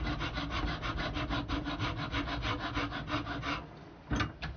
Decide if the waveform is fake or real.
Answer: real